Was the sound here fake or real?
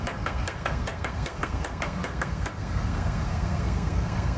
fake